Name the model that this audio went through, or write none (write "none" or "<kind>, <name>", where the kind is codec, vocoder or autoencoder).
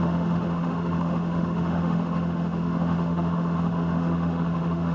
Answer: autoencoder, DAC-VAE